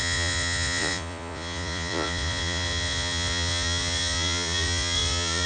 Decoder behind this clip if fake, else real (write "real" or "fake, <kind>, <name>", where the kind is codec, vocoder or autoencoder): fake, vocoder, Vocos